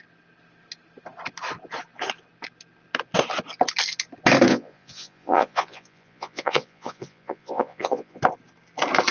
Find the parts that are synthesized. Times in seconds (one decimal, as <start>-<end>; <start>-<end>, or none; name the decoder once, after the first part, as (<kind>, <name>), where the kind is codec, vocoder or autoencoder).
4.5-8.2 (vocoder, Vocos)